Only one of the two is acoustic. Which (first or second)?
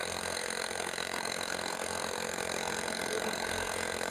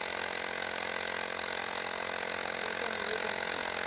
second